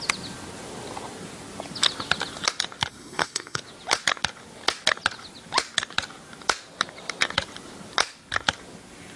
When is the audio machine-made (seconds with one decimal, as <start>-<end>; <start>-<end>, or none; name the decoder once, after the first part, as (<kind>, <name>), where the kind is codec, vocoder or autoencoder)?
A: 2.9-3.6 (codec, SNAC)